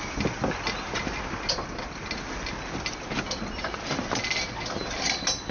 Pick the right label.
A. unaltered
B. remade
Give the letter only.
A